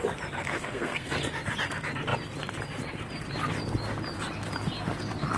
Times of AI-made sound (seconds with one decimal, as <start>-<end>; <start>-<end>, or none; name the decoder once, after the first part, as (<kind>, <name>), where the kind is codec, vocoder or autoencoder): 0.5-1.2 (codec, SNAC)

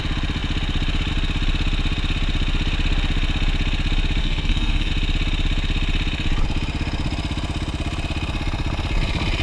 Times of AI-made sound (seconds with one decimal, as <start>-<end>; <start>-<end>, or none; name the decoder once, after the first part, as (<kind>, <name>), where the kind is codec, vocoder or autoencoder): 4.2-4.9 (codec, SNAC)

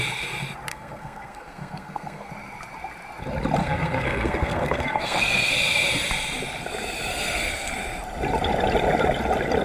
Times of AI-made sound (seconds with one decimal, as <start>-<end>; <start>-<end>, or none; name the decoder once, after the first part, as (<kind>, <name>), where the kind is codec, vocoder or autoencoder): 0.7-2.3 (codec, SNAC); 3.6-5.5; 7.1-7.7